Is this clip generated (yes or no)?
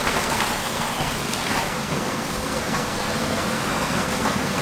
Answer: yes